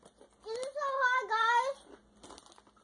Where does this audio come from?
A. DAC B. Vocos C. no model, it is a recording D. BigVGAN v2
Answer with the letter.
C